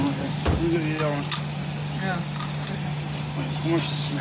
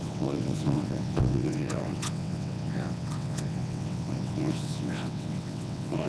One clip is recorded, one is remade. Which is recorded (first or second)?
first